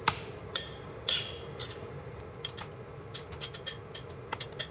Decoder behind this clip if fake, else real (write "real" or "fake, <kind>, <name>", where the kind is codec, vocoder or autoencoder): real